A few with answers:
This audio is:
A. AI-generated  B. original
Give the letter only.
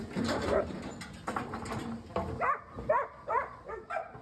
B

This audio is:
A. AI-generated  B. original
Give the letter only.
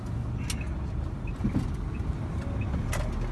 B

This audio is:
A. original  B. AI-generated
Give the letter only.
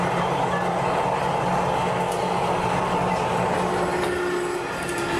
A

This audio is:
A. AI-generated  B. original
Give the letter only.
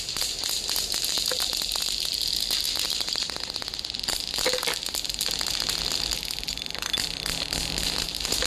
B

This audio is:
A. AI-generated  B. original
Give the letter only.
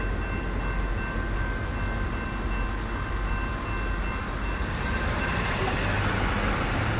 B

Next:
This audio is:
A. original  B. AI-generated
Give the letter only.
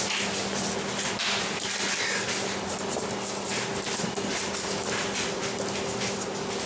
A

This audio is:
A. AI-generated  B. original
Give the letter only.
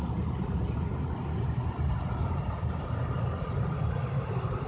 B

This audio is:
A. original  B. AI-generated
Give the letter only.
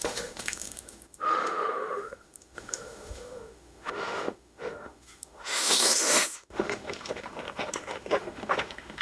B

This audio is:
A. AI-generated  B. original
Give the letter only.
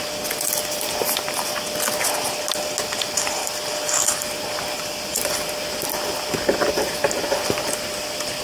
B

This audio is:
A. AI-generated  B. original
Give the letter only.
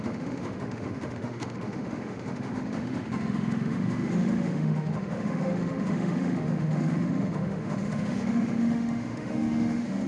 A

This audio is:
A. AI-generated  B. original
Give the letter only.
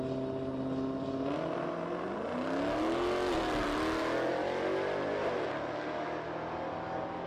B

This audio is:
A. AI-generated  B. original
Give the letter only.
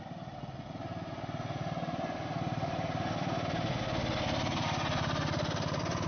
B